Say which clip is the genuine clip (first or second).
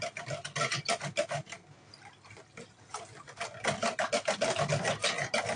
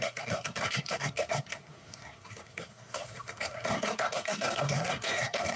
first